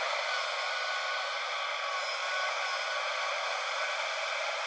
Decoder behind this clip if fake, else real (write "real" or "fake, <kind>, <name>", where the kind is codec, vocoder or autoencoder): real